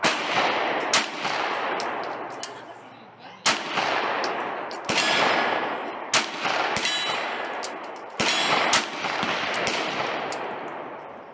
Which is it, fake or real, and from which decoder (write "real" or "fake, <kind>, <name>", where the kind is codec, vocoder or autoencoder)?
real